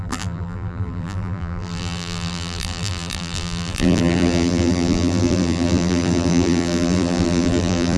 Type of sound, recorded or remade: remade